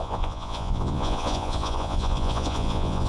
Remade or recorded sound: remade